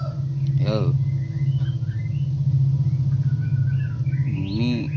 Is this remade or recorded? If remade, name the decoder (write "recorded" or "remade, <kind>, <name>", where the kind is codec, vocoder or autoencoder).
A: recorded